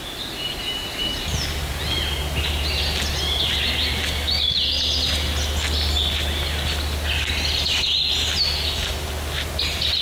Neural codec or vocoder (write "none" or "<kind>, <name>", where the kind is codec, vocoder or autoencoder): none